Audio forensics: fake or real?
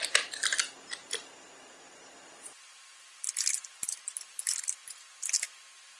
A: real